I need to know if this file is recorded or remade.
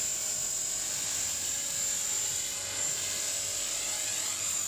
recorded